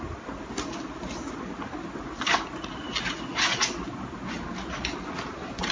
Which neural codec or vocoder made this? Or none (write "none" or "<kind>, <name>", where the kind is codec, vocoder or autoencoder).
none